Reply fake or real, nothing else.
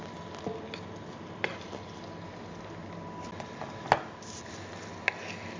real